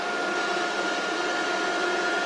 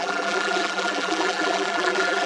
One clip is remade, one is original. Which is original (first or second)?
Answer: first